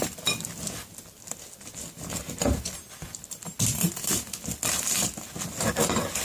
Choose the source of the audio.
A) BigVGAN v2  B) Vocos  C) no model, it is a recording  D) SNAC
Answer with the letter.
C